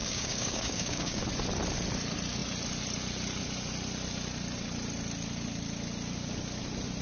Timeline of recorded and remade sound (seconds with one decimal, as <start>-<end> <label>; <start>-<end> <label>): 0.0-1.2 remade; 1.2-7.0 recorded

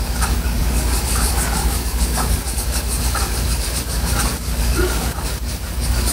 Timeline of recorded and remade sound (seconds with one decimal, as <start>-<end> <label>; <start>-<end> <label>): 0.0-6.1 remade

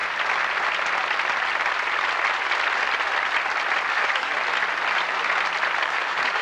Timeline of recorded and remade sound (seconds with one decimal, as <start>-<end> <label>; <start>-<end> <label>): 0.0-3.8 recorded; 3.8-4.3 remade; 4.3-5.8 recorded; 5.8-6.4 remade

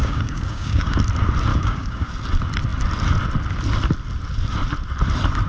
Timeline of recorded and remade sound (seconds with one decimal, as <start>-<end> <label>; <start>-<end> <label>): 0.0-1.0 remade; 1.0-1.5 recorded; 1.5-2.1 remade; 2.1-5.5 recorded

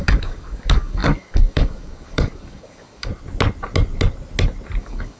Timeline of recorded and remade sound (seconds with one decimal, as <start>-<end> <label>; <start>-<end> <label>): 0.0-3.1 remade; 3.1-4.8 recorded; 4.8-5.2 remade

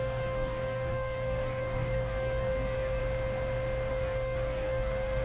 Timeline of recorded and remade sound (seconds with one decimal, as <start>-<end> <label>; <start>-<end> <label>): 0.0-3.0 remade; 3.0-3.9 recorded; 3.9-5.2 remade

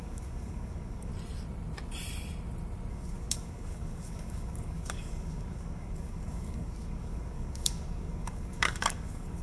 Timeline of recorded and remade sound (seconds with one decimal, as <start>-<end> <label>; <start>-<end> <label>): 0.0-1.1 remade; 1.1-2.9 recorded; 2.9-9.4 remade